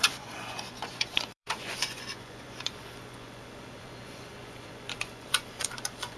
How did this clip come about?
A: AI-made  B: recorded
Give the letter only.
A